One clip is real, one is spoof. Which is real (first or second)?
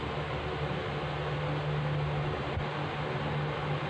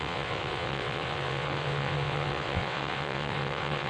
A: first